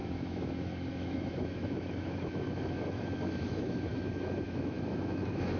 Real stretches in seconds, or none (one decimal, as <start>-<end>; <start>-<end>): none